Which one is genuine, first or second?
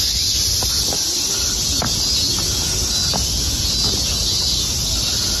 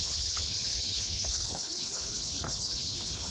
first